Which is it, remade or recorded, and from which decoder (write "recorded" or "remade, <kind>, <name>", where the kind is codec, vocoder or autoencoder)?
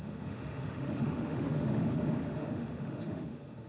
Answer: remade, autoencoder, DAC-VAE